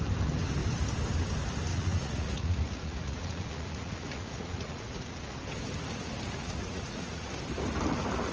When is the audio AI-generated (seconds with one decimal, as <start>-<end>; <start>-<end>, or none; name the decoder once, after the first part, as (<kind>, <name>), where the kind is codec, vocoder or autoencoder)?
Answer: 1.7-5.3 (vocoder, Vocos); 6.4-7.3